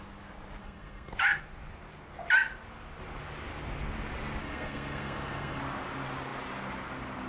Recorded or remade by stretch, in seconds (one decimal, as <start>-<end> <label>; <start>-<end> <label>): 0.0-0.6 recorded; 0.6-1.1 remade; 1.1-4.4 recorded; 4.4-5.6 remade; 5.6-7.3 recorded